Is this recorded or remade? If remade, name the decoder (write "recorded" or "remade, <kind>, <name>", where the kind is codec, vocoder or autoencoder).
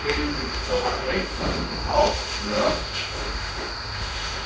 remade, autoencoder, DAC-VAE